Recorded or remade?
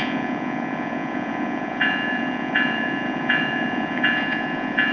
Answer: remade